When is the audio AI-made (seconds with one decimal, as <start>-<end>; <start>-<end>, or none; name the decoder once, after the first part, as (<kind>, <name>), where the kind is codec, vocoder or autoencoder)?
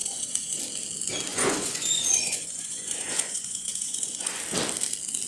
0.0-0.6 (vocoder, Vocos); 1.3-4.4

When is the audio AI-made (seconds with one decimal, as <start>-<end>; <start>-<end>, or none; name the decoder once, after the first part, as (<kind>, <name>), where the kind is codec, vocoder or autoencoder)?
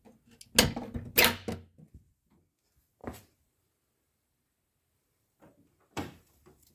3.0-6.7 (vocoder, BigVGAN v2)